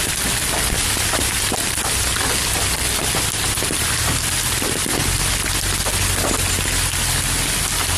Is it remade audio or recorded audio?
recorded